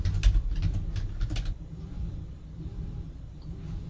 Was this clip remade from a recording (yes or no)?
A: no